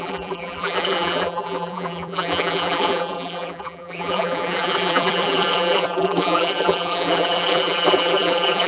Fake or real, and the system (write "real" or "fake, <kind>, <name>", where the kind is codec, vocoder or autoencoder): fake, vocoder, BigVGAN v2